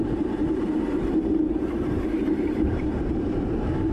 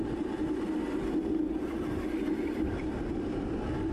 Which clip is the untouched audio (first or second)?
second